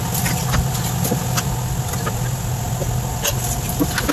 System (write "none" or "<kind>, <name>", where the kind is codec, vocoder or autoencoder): none